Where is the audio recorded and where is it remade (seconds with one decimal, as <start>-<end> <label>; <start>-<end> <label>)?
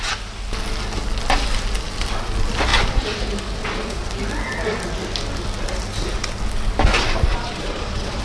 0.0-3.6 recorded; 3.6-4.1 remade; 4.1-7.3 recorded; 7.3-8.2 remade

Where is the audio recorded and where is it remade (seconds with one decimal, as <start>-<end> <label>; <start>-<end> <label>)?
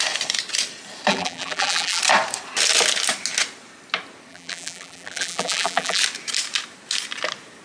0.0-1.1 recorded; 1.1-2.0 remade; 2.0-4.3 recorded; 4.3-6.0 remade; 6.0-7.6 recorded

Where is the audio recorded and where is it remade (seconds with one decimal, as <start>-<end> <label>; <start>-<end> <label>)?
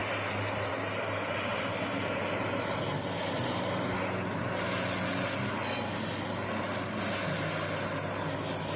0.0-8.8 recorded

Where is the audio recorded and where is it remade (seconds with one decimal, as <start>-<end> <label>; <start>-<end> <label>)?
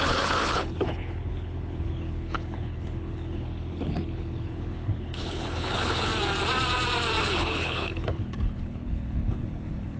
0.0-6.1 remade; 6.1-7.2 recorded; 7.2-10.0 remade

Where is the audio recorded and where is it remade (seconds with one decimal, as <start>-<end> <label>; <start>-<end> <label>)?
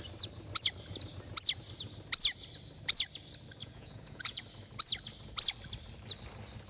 0.0-3.6 recorded; 3.6-4.4 remade; 4.4-6.7 recorded